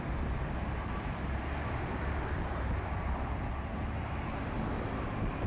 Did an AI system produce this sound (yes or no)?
no